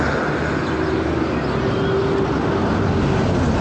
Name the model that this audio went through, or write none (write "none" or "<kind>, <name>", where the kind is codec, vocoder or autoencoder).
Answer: none